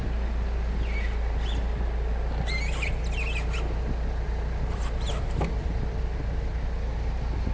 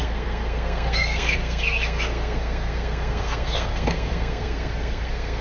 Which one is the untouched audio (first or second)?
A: first